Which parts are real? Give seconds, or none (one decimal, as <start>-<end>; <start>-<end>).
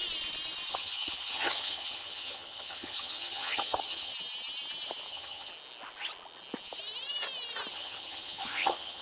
0.0-0.7; 4.1-5.1; 5.5-7.7